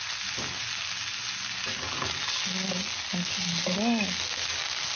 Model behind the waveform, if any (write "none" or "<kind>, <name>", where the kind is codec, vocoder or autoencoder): none